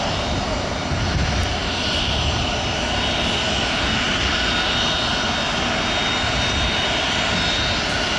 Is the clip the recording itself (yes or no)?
yes